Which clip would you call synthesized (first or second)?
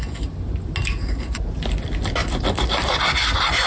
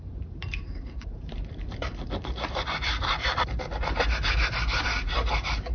second